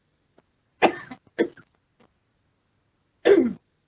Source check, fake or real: real